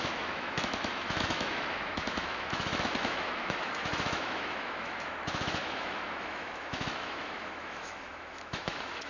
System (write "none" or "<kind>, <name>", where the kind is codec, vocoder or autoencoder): autoencoder, DAC-VAE